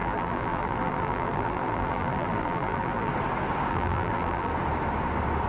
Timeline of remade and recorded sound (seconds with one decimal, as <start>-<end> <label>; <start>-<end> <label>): 0.0-3.1 remade; 3.1-3.7 recorded; 3.7-4.5 remade; 4.5-5.5 recorded